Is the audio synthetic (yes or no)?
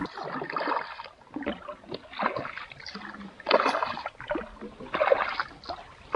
no